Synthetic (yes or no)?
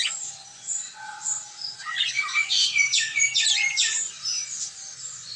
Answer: yes